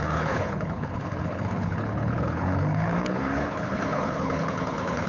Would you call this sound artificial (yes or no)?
yes